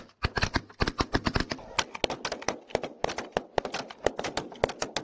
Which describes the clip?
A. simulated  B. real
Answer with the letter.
B